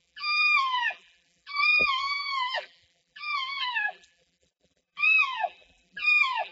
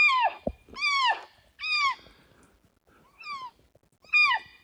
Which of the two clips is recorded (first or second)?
second